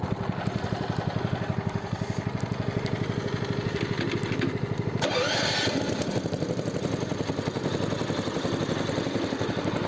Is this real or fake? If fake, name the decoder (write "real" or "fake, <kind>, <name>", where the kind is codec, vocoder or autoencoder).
real